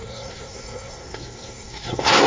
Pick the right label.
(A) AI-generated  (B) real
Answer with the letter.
A